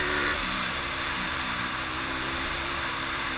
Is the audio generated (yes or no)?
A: yes